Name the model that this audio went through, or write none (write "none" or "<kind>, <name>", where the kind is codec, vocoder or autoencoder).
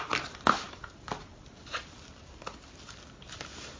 none